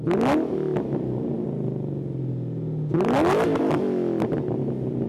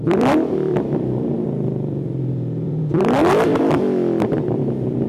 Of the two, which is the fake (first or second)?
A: second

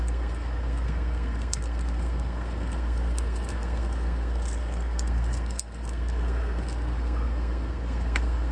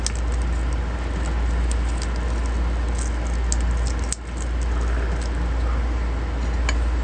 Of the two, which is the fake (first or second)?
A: first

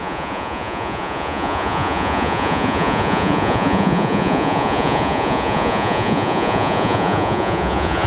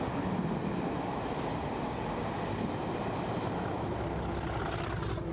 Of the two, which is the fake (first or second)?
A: first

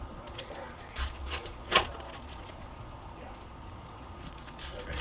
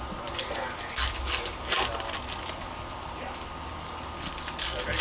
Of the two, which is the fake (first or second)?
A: first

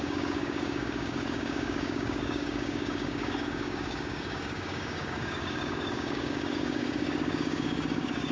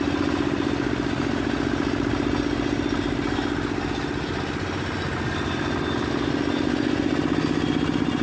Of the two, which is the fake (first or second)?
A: first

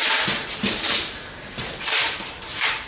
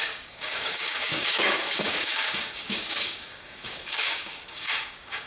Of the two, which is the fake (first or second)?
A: second